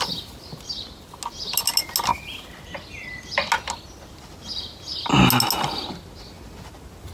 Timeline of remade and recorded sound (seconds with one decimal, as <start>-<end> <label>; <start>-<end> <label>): 0.0-7.1 recorded